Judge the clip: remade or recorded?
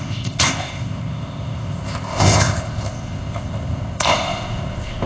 remade